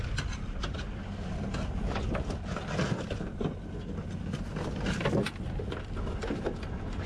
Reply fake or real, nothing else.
real